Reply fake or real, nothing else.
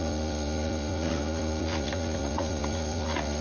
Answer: fake